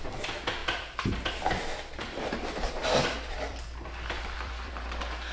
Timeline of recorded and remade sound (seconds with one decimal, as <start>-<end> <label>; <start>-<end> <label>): 0.0-2.8 recorded; 2.8-4.7 remade; 4.7-5.3 recorded